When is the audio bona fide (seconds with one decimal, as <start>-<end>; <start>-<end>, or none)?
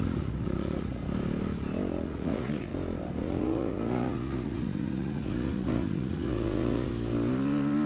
1.0-1.9; 2.7-3.2; 6.9-7.9